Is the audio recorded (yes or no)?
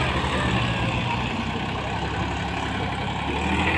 yes